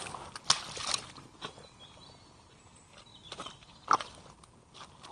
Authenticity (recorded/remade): recorded